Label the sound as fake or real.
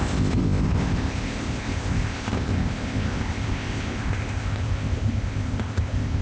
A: fake